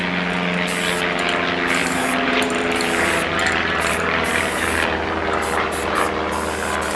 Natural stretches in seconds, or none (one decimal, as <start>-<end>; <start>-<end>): 0.0-1.8; 6.0-7.0